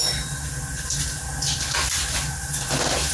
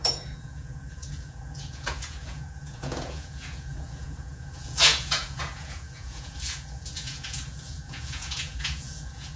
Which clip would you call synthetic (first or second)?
second